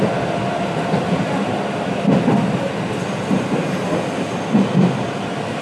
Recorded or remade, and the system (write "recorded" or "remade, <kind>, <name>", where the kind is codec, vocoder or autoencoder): recorded